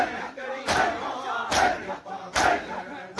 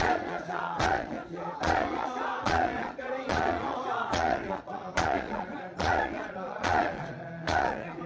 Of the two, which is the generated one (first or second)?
second